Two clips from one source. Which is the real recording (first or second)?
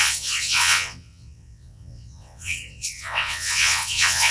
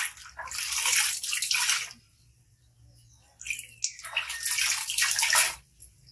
second